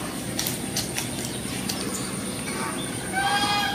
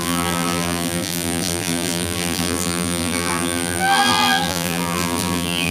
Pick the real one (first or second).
first